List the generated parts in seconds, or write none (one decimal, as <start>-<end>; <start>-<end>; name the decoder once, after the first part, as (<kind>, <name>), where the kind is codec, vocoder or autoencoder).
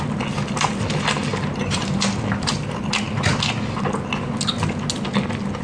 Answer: 1.3-2.0 (vocoder, BigVGAN v2)